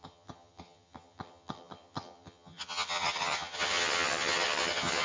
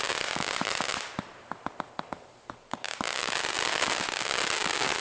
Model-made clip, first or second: first